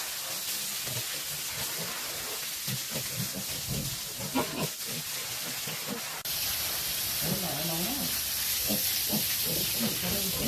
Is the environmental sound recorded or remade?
recorded